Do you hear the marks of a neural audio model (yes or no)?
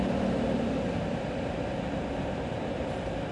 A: no